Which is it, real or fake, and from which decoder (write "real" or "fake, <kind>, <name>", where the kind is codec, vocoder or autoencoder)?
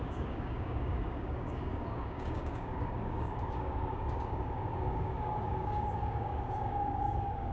fake, codec, DAC